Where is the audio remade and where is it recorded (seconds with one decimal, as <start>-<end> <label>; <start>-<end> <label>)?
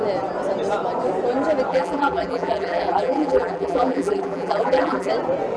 0.0-1.7 recorded; 1.7-5.1 remade; 5.1-5.6 recorded